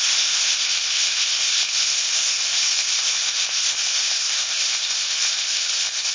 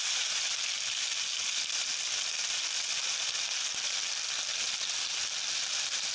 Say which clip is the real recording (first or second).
second